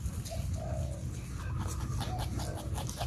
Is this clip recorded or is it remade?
recorded